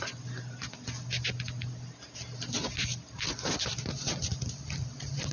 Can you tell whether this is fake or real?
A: real